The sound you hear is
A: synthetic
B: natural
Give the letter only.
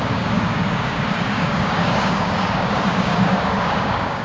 A